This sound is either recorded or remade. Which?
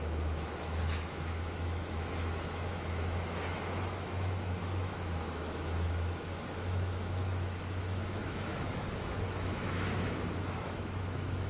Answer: remade